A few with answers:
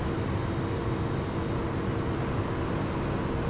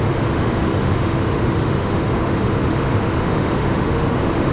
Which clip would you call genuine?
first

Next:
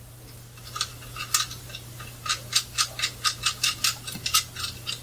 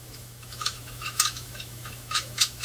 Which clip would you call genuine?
first